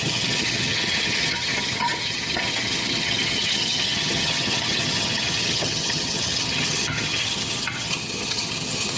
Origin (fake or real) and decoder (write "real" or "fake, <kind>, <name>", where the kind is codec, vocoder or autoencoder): fake, vocoder, HiFi-GAN